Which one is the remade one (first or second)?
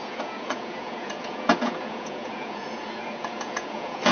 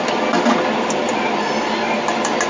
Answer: first